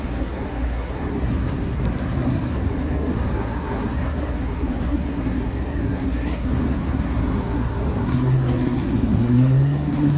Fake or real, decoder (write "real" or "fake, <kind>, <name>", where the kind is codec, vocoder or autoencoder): fake, codec, SNAC